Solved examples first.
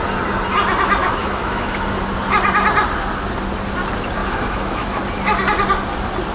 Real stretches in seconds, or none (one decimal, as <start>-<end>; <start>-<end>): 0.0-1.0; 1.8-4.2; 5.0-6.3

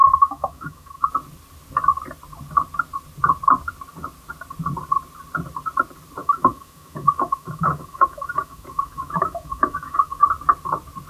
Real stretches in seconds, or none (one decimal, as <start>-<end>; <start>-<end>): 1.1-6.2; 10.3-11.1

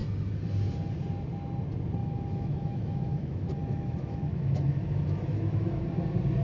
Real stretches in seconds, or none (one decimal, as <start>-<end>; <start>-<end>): 0.0-2.0; 5.8-6.4

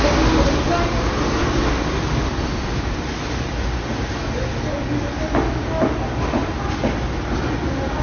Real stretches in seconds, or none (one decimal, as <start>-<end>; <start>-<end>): 0.0-8.0